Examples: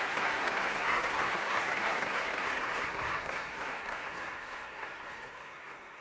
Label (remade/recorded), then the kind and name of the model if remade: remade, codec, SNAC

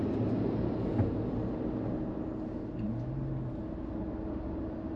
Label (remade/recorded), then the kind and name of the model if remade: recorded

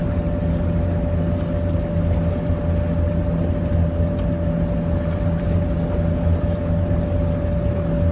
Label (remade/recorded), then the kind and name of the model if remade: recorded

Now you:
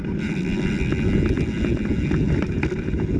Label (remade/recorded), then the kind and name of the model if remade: recorded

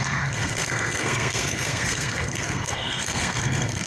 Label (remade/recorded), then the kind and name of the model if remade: remade, codec, SNAC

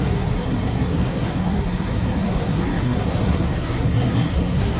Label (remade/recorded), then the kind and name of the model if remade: remade, codec, SNAC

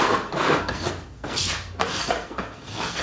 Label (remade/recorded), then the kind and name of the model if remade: remade, codec, SNAC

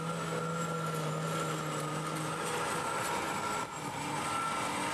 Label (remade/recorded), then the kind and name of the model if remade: recorded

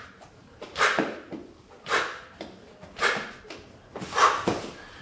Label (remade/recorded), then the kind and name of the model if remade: recorded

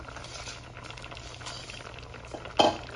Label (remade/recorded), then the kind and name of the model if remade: recorded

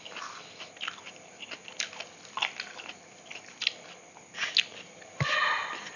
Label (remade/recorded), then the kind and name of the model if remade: recorded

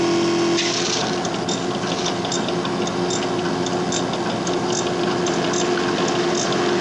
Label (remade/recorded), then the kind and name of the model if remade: recorded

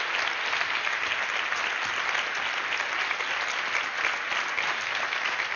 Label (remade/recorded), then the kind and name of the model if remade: recorded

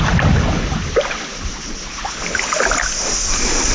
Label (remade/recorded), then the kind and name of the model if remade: recorded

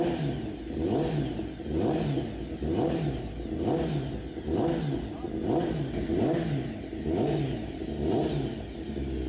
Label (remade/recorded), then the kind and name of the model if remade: recorded